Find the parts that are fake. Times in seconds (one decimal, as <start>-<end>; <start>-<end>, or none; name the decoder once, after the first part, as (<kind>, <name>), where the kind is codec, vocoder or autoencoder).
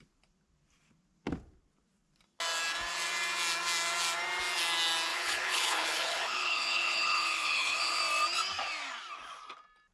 5.1-8.0 (codec, HILCodec)